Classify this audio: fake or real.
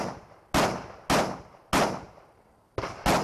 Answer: real